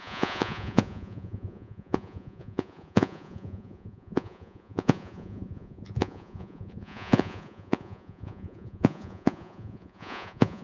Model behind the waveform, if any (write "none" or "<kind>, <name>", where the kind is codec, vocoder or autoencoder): vocoder, Vocos